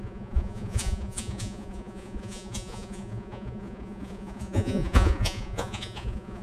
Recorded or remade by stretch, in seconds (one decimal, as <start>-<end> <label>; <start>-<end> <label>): 0.0-6.4 remade

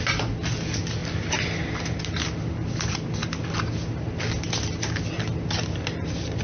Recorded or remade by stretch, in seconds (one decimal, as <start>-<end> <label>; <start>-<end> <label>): 0.0-6.4 recorded

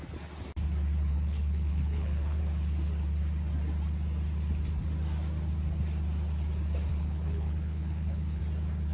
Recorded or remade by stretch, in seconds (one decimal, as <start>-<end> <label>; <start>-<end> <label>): 0.0-1.1 recorded; 1.1-2.4 remade; 2.4-6.9 recorded; 6.9-8.4 remade; 8.4-8.9 recorded